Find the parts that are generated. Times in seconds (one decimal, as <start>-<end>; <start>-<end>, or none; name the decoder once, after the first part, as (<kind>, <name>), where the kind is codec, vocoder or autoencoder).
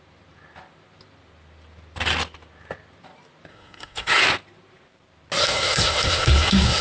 3.5-4.2 (codec, SNAC); 5.4-6.8